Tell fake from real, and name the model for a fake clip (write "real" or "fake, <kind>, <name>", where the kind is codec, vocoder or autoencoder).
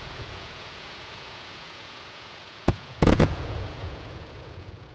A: fake, vocoder, Vocos